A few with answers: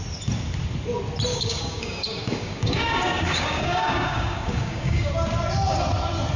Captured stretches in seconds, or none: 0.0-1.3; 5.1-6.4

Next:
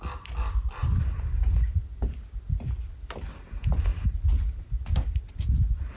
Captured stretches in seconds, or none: 0.0-6.0

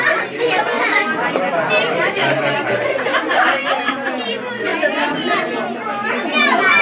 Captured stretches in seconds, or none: 0.0-6.8

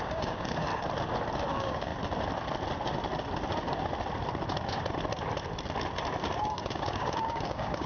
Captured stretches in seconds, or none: 0.7-1.5; 1.9-6.4

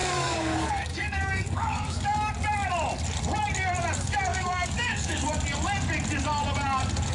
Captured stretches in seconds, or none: 2.3-4.3; 5.2-7.1

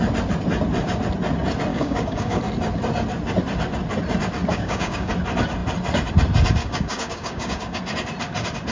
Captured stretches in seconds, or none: 0.0-1.7; 2.4-4.5; 5.1-6.6; 7.8-8.7

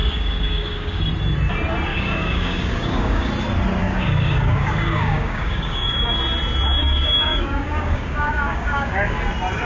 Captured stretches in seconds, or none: 1.0-1.9; 3.3-3.8; 6.2-6.8; 9.2-9.7